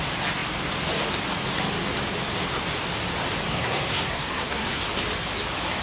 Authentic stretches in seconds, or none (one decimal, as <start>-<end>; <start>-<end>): 0.0-3.5; 4.8-5.8